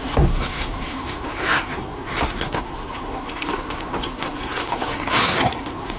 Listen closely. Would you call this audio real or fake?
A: fake